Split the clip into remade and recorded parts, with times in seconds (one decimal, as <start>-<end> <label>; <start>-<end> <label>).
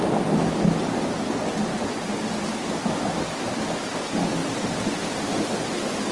0.0-6.1 recorded